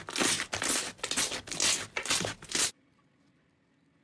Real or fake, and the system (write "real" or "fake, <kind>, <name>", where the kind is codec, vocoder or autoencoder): real